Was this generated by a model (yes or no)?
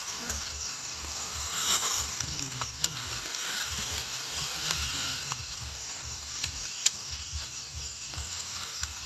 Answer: yes